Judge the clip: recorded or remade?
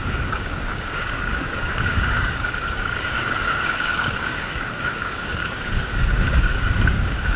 remade